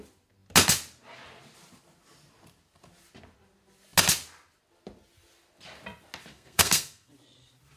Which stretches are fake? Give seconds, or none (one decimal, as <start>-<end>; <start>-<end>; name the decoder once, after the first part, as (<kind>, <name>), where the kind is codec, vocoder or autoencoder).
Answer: 6.3-7.1 (codec, SNAC)